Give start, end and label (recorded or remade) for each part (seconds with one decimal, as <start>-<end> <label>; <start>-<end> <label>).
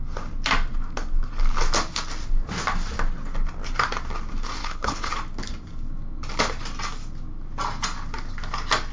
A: 0.0-4.6 recorded; 4.6-5.1 remade; 5.1-8.9 recorded